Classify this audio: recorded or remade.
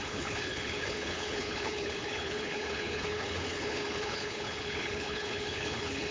remade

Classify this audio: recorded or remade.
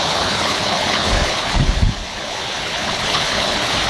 remade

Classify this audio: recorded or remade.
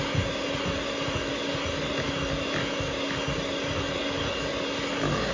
recorded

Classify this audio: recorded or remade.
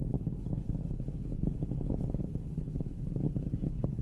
remade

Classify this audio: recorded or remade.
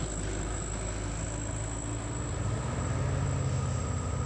recorded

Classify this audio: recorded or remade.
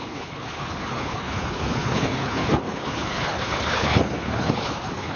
remade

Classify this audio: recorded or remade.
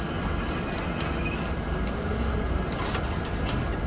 recorded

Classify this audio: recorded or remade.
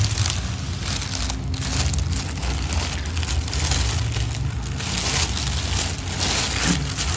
recorded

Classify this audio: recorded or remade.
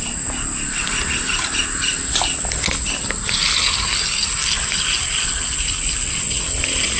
recorded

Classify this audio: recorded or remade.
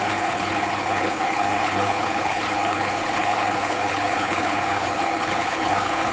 remade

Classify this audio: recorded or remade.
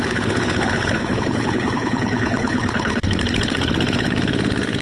remade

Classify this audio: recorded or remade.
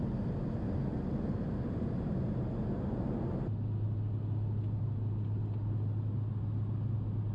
recorded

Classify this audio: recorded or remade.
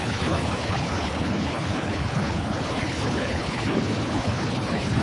remade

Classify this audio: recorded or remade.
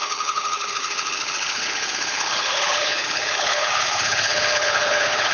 remade